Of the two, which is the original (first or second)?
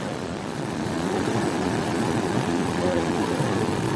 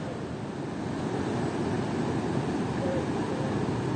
second